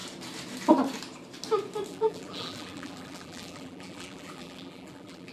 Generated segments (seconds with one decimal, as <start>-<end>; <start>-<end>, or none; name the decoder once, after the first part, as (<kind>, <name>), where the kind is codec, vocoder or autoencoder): 1.9-5.3 (vocoder, BigVGAN v2)

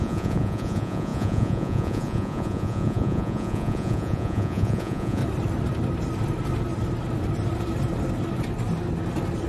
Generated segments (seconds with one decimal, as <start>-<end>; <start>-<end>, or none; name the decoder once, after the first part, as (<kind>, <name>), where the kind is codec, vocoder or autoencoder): 0.0-5.2 (vocoder, Vocos)

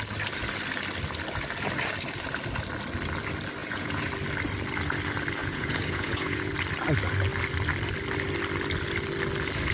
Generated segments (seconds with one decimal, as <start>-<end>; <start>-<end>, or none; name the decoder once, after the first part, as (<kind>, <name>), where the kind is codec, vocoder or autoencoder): 3.6-4.1 (vocoder, Vocos); 5.4-6.5

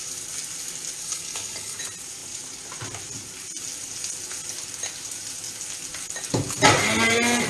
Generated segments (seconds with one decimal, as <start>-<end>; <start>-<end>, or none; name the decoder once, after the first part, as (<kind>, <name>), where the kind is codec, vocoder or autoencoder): 1.0-1.8 (codec, HILCodec)

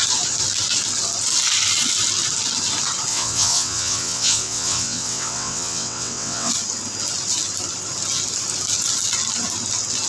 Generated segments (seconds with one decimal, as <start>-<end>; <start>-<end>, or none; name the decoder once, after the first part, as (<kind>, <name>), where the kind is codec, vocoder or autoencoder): 3.1-6.5 (vocoder, WaveNeXt)

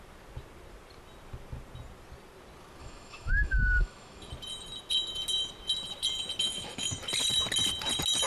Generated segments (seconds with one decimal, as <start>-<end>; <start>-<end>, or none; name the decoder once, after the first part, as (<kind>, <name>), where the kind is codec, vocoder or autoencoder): 2.8-4.3 (autoencoder, DAC-VAE); 6.4-7.0